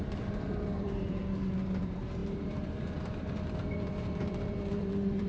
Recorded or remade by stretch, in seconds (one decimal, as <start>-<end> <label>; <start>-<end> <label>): 0.0-1.2 remade; 1.2-1.8 recorded; 1.8-5.3 remade